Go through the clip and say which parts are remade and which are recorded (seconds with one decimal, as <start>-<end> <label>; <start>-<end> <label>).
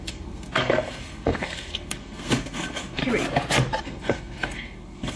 0.0-3.0 remade; 3.0-3.8 recorded; 3.8-5.2 remade